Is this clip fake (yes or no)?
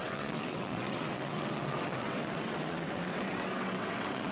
yes